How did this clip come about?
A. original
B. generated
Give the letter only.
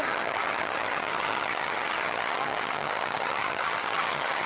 B